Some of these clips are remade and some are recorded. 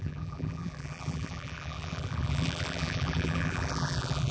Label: remade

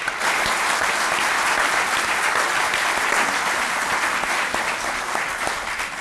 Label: remade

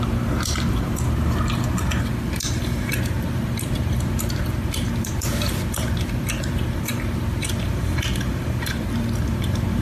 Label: remade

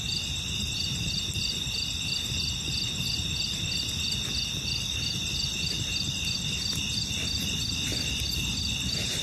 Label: recorded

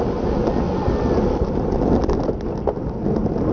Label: recorded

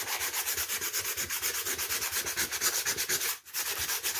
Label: recorded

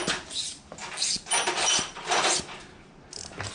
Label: recorded